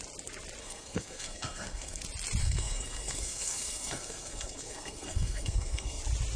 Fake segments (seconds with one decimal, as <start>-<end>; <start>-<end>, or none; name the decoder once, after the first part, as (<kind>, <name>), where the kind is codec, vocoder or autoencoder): 0.6-2.0 (codec, SNAC); 2.4-6.0